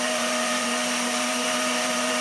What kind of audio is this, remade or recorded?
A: remade